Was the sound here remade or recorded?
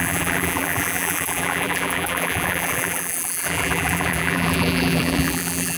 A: remade